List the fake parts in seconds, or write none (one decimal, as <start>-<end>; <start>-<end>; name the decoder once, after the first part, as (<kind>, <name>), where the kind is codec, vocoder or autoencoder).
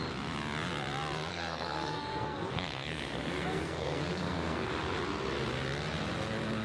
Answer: 1.3-4.7 (codec, SNAC)